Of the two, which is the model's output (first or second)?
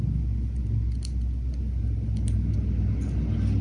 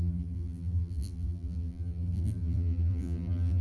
second